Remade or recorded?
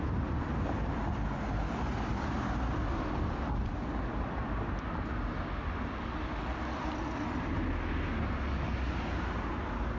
recorded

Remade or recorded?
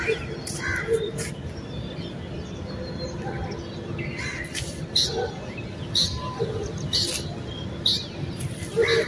recorded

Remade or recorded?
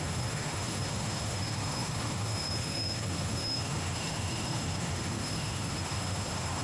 remade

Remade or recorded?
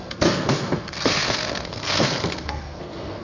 remade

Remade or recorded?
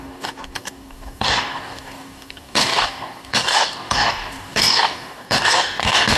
remade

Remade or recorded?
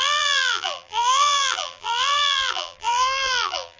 remade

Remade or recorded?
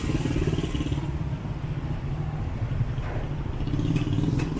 recorded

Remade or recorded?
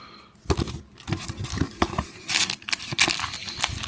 recorded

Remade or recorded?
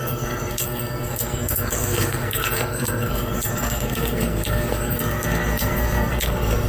remade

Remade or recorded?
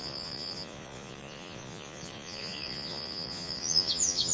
remade